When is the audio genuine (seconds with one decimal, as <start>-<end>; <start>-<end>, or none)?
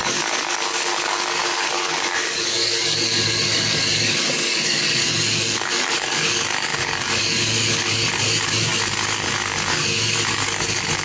none